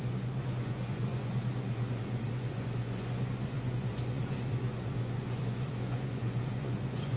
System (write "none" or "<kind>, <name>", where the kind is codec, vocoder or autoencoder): vocoder, Vocos